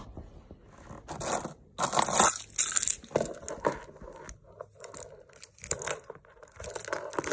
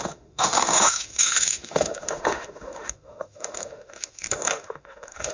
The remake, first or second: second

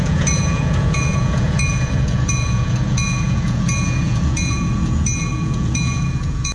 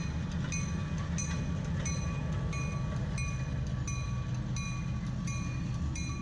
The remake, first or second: first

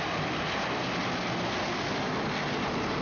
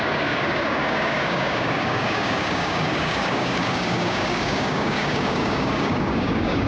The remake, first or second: second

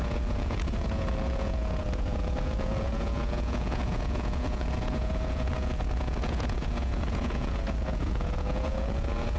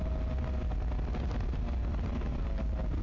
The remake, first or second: first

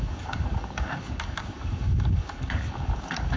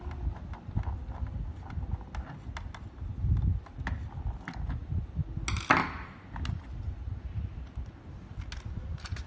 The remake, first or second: first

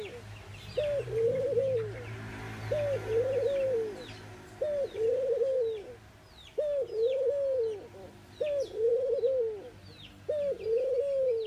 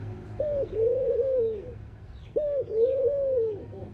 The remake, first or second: second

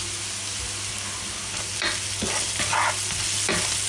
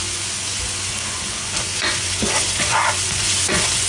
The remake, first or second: second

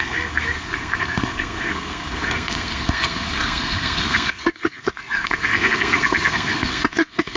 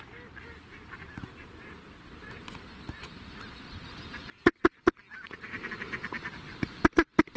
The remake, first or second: first